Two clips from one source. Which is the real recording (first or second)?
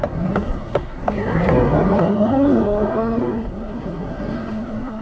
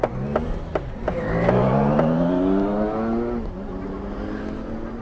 second